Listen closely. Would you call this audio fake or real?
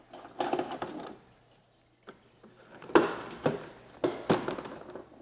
real